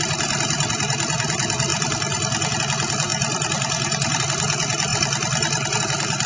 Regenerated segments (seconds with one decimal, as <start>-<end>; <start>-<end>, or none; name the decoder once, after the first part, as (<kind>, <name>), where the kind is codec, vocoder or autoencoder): 0.0-6.3 (vocoder, BigVGAN v2)